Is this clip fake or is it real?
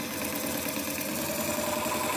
real